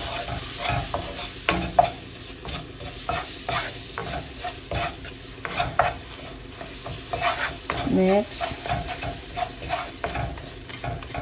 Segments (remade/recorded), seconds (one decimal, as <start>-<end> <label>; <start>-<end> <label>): 0.0-11.2 recorded